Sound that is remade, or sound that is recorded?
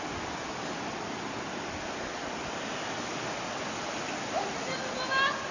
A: recorded